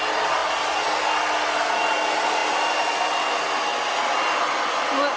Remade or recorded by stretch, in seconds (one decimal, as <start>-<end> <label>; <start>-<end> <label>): 0.0-5.2 recorded